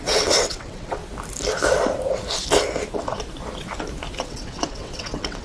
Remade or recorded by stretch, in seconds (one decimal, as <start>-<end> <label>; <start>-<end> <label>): 0.0-1.0 remade; 1.0-4.2 recorded; 4.2-5.4 remade